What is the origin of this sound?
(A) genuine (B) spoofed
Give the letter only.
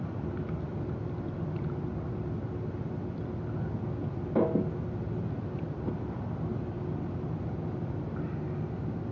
A